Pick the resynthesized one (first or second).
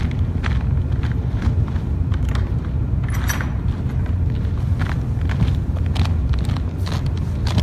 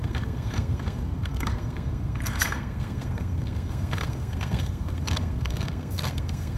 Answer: second